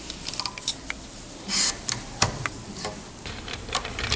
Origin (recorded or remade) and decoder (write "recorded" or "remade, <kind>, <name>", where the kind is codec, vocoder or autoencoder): recorded